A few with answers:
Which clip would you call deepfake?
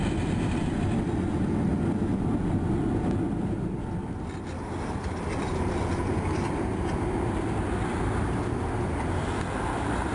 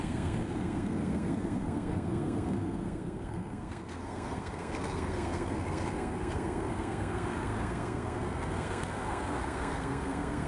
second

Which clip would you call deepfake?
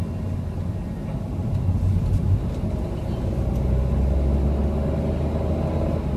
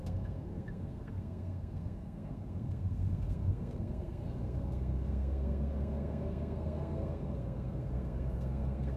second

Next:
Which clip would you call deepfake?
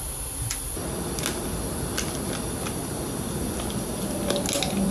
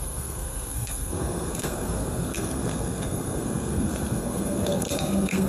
second